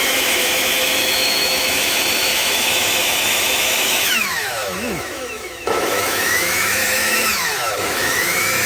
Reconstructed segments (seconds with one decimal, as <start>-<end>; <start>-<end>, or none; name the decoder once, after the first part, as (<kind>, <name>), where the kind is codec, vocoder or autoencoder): 0.0-8.7 (autoencoder, DAC-VAE)